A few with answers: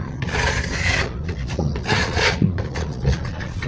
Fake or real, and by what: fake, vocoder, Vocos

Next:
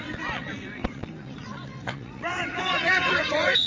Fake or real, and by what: fake, vocoder, WaveNeXt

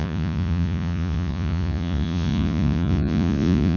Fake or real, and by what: fake, vocoder, Vocos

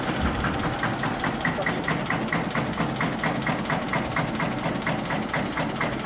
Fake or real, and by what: real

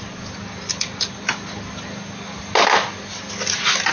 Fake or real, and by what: real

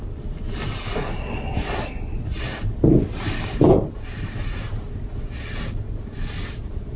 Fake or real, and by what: real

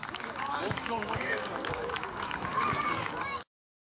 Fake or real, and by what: fake, codec, DAC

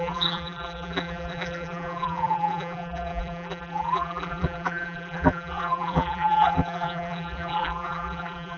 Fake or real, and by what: fake, vocoder, BigVGAN v2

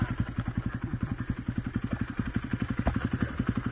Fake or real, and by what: real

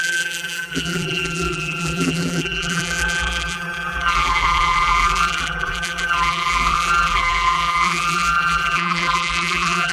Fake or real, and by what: fake, vocoder, BigVGAN v2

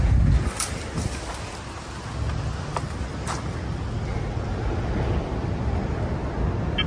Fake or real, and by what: real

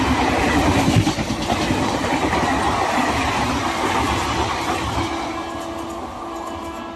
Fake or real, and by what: real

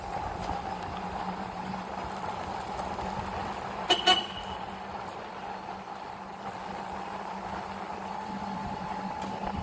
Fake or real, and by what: real